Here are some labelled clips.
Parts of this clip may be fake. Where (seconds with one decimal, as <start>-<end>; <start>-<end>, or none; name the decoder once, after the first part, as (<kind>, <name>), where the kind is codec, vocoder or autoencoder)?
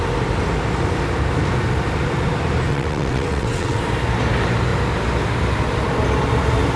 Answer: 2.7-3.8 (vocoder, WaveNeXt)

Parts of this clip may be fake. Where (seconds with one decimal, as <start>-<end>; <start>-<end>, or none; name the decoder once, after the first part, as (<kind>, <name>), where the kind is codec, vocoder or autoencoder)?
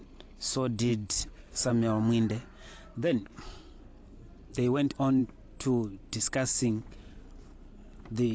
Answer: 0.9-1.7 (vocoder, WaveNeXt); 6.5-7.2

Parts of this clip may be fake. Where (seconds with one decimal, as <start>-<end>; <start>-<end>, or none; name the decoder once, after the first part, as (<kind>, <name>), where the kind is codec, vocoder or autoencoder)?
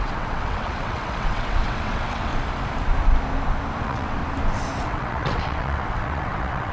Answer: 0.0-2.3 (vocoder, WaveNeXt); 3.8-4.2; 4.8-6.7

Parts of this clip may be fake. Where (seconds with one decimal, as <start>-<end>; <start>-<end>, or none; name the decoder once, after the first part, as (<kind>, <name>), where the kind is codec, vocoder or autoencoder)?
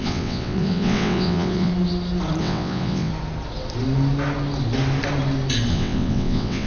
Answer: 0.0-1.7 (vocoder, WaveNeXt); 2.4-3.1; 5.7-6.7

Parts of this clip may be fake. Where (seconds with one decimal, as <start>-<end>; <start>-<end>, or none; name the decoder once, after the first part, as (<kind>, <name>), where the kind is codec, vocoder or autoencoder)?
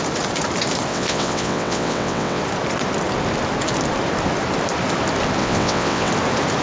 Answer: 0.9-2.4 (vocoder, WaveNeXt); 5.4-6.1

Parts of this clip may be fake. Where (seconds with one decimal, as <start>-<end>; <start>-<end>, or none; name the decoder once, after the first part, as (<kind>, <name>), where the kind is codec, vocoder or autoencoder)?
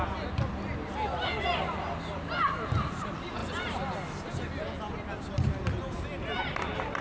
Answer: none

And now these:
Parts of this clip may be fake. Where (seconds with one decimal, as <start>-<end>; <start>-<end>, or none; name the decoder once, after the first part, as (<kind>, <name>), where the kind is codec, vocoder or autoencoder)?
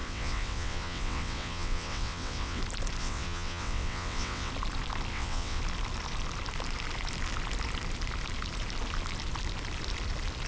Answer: 0.0-2.6 (vocoder, WaveNeXt); 3.0-4.5; 5.1-5.6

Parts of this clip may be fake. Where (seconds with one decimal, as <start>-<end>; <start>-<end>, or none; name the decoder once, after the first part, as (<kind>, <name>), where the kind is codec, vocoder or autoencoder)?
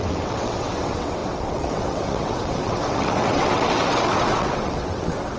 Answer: 0.0-5.4 (vocoder, WaveNeXt)